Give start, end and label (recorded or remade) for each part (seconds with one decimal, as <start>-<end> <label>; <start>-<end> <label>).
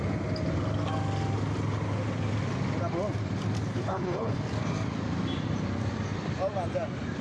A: 0.0-3.7 recorded; 3.7-4.4 remade; 4.4-7.2 recorded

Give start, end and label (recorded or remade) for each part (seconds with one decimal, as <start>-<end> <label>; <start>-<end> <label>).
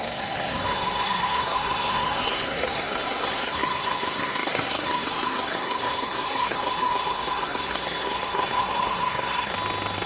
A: 0.0-9.5 remade; 9.5-10.1 recorded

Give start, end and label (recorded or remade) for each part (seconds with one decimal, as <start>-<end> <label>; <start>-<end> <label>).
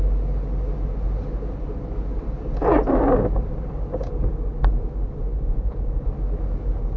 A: 0.0-5.3 recorded; 5.3-6.1 remade; 6.1-7.0 recorded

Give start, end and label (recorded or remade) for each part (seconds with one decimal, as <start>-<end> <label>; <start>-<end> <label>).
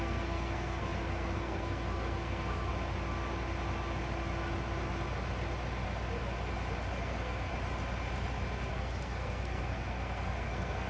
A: 0.0-2.7 remade; 2.7-7.0 recorded; 7.0-7.5 remade; 7.5-8.7 recorded; 8.7-10.9 remade